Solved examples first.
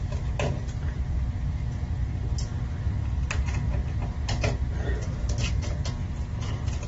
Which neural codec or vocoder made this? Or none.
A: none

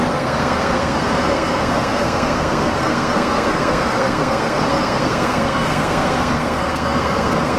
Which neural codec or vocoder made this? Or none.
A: codec, SNAC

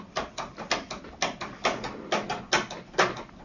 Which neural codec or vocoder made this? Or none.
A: none